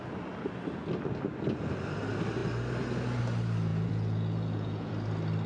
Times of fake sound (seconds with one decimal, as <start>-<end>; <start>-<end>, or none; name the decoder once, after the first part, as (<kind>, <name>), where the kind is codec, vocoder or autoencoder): 3.7-4.9 (vocoder, Vocos)